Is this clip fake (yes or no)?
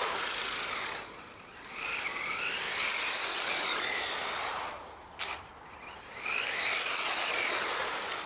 no